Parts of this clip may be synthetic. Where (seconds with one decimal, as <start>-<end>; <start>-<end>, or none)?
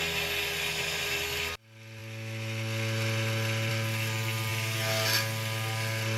none